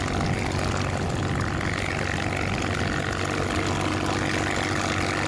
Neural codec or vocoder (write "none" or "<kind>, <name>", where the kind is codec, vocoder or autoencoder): none